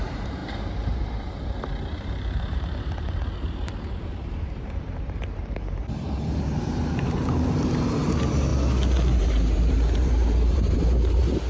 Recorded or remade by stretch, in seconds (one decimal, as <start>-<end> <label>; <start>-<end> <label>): 0.0-8.5 remade; 8.5-9.2 recorded; 9.2-11.5 remade